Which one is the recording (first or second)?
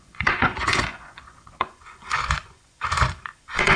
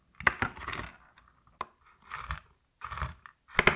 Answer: second